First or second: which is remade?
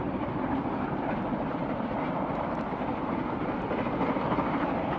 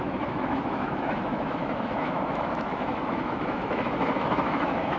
second